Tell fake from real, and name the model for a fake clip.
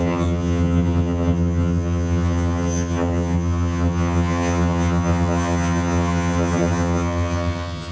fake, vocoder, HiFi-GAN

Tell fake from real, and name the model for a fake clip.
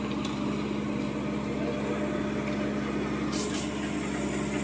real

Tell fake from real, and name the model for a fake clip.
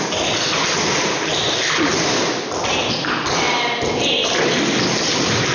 real